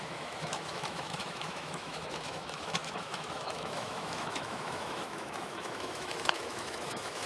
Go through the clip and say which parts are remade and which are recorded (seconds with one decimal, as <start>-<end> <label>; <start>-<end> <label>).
0.0-7.3 remade